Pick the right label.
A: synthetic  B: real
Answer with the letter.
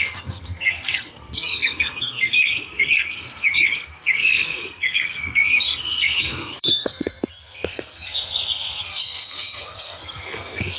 A